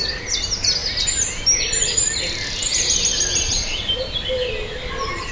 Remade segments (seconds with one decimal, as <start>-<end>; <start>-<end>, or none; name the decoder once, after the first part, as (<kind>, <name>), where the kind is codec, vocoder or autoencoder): none